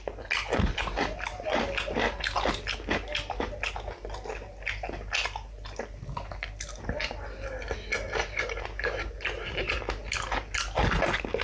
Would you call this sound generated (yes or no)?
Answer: no